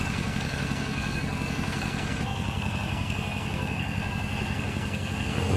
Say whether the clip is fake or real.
fake